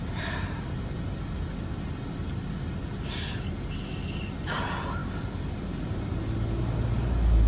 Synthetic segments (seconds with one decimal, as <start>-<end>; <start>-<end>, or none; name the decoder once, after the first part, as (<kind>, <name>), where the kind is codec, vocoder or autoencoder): none